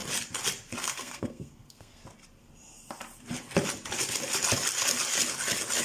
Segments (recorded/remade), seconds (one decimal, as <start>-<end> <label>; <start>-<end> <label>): 0.0-0.8 recorded; 0.8-2.0 remade; 2.0-5.8 recorded